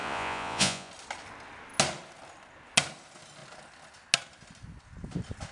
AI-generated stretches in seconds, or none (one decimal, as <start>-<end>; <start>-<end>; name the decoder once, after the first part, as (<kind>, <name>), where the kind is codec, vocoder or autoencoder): 0.0-0.9 (vocoder, Vocos)